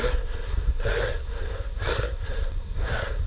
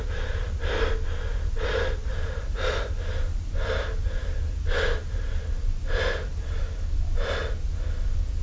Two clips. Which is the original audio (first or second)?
second